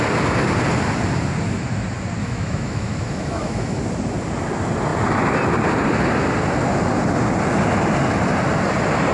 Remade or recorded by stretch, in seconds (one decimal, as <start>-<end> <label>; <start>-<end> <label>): 0.0-2.2 recorded; 2.2-3.8 remade; 3.8-9.1 recorded